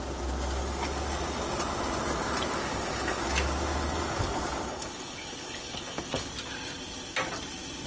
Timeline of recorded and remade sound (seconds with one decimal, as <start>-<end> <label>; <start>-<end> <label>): 0.0-2.6 recorded; 2.6-3.2 remade; 3.2-4.7 recorded; 4.7-6.3 remade; 6.3-7.9 recorded